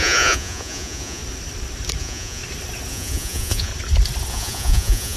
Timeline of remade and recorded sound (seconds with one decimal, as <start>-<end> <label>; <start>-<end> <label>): 0.0-1.2 remade; 1.2-2.0 recorded; 2.0-2.4 remade; 2.4-2.9 recorded; 2.9-3.7 remade; 3.7-4.3 recorded; 4.3-5.2 remade